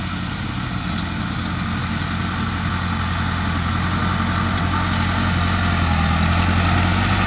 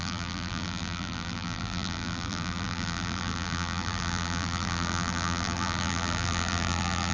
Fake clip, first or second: second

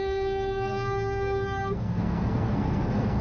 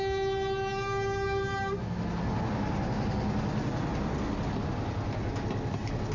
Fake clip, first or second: first